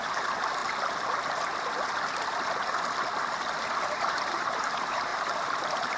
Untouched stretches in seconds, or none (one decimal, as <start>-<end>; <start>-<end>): 0.6-3.9; 5.1-5.6